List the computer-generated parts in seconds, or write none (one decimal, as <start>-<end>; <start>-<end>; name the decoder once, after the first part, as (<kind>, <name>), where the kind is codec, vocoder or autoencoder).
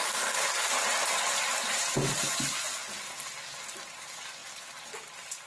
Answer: 0.0-2.8 (vocoder, BigVGAN v2); 4.0-5.5